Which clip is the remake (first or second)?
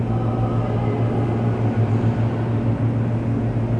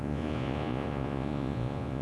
second